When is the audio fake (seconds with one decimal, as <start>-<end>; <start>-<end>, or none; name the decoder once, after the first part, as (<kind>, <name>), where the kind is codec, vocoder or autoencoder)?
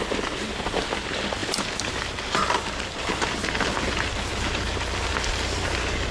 none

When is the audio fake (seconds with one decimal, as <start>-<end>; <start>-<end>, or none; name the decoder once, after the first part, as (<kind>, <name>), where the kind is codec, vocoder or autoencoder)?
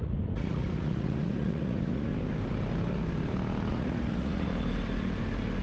0.0-2.1 (vocoder, Vocos); 3.7-4.5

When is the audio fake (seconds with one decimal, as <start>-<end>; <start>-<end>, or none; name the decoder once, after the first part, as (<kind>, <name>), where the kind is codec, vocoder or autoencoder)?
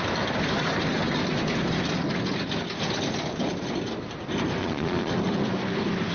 4.6-5.1 (vocoder, Vocos)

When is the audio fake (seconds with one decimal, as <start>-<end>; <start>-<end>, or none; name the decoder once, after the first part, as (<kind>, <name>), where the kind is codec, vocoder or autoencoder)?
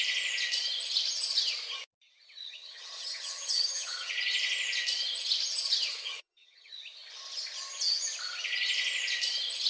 2.4-4.1 (vocoder, HiFi-GAN); 5.9-6.8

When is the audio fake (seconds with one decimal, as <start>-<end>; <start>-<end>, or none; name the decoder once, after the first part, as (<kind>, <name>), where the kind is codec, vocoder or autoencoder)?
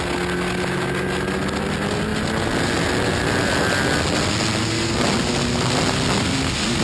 none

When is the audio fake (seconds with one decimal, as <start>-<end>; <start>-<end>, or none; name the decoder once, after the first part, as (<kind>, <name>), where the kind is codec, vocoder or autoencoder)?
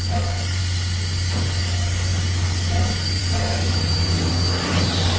0.0-0.6 (codec, DAC); 1.6-5.2